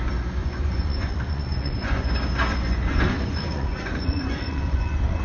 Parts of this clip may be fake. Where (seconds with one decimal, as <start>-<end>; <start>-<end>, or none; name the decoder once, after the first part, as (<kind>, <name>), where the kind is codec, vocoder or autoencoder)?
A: 0.4-2.1 (vocoder, Vocos); 2.5-5.2